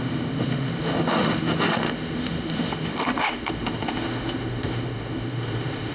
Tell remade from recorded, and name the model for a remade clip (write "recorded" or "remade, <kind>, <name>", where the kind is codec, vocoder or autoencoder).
remade, autoencoder, DAC-VAE